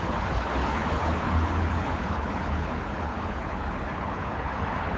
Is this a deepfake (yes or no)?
yes